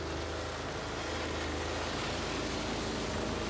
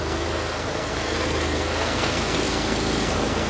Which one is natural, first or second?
first